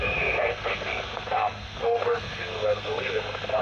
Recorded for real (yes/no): no